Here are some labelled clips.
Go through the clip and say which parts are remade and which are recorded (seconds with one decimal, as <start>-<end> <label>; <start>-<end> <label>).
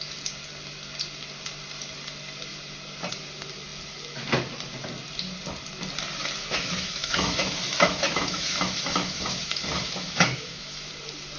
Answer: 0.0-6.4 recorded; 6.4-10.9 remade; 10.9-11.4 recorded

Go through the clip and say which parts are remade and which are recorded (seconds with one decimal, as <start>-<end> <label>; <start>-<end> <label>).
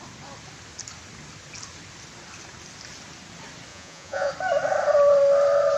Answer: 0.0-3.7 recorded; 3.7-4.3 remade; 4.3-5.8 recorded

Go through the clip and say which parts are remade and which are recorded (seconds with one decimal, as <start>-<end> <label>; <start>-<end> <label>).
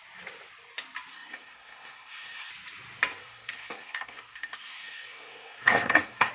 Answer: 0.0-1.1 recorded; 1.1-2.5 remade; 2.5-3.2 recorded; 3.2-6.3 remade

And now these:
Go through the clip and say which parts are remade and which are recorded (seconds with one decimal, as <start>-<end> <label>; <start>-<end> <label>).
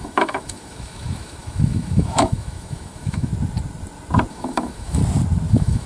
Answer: 0.0-3.3 remade; 3.3-4.3 recorded; 4.3-5.0 remade; 5.0-5.5 recorded; 5.5-5.9 remade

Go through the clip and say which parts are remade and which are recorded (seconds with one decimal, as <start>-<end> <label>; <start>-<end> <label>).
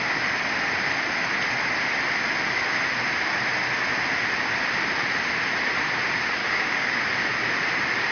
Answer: 0.0-6.4 recorded; 6.4-7.0 remade; 7.0-8.1 recorded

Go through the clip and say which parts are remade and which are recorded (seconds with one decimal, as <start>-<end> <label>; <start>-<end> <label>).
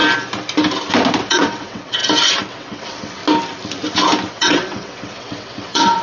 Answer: 0.0-1.2 recorded; 1.2-2.0 remade; 2.0-2.5 recorded; 2.5-3.2 remade; 3.2-4.3 recorded; 4.3-6.0 remade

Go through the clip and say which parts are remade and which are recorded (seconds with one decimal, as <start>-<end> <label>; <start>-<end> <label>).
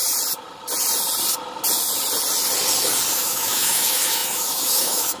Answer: 0.0-3.1 recorded; 3.1-5.2 remade